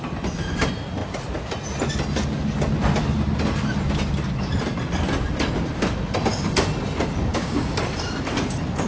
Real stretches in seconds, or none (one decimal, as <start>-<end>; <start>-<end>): 0.0-7.3; 7.8-8.9